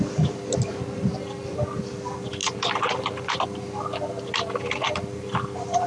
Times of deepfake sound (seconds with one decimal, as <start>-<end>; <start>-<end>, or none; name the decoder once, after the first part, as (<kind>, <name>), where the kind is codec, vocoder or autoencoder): 2.4-5.9 (vocoder, BigVGAN v2)